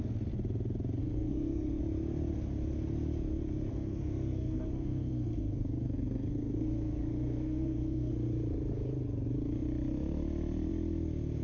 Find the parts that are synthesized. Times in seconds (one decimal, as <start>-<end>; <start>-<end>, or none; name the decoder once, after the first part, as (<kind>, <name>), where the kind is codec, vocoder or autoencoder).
1.0-1.8 (codec, SNAC); 3.7-8.1